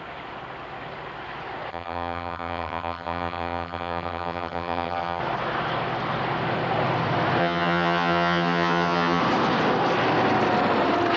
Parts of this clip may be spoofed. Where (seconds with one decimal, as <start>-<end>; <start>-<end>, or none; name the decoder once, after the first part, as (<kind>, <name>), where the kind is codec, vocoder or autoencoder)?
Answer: 1.7-5.2 (vocoder, HiFi-GAN); 7.4-9.2